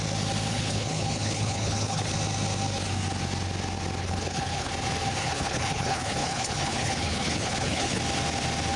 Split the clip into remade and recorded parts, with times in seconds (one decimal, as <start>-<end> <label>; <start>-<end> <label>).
0.0-0.5 recorded; 0.5-2.1 remade; 2.1-4.0 recorded; 4.0-4.7 remade; 4.7-5.2 recorded; 5.2-8.0 remade; 8.0-8.8 recorded